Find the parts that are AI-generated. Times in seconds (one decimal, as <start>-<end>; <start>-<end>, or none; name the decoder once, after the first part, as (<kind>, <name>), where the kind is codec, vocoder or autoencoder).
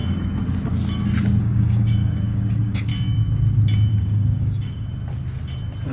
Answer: 1.4-2.9 (codec, DAC); 3.9-4.9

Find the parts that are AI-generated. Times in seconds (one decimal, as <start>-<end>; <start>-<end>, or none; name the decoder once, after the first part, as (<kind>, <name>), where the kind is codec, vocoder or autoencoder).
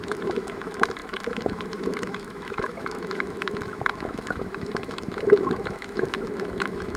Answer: 0.0-7.0 (autoencoder, DAC-VAE)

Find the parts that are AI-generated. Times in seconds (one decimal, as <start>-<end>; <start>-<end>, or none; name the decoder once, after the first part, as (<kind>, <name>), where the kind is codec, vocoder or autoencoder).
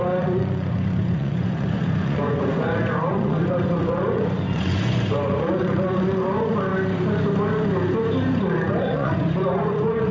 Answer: 0.0-6.7 (vocoder, Vocos); 8.4-10.1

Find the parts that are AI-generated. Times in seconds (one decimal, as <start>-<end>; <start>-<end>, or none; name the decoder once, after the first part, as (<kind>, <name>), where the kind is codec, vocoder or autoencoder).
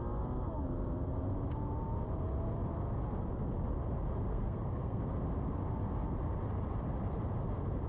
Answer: 4.3-5.0 (codec, SNAC)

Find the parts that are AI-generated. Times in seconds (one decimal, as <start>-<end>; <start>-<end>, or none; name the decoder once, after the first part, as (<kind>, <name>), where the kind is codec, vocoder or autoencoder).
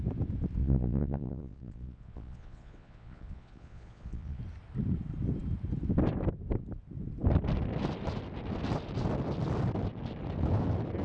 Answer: 0.6-4.4 (vocoder, Vocos)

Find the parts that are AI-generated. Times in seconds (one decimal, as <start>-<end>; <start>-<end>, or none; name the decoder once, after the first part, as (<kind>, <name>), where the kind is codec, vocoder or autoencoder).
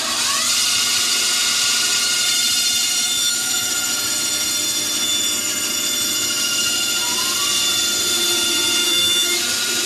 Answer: 3.2-3.7 (autoencoder, DAC-VAE); 8.8-9.4